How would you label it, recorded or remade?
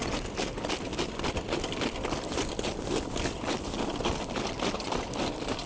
recorded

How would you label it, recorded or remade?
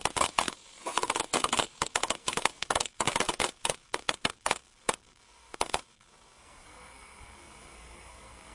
remade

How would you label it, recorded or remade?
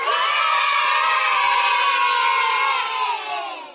recorded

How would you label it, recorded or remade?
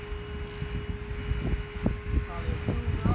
recorded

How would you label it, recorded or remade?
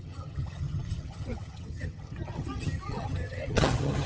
remade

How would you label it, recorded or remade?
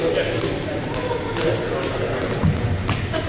recorded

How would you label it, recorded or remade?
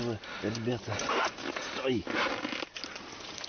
recorded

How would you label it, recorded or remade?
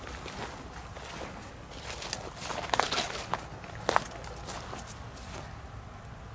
recorded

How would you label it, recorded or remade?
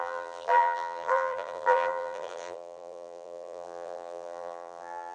remade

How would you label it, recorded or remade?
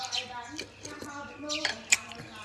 recorded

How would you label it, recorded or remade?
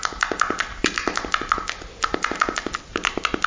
recorded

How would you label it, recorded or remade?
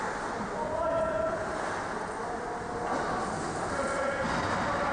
recorded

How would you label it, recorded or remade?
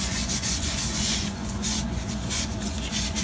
remade